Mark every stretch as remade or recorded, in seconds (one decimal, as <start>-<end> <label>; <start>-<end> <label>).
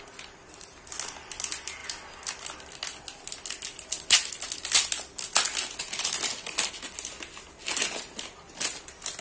0.0-9.2 recorded